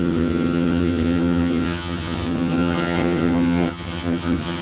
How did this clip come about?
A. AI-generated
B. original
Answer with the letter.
A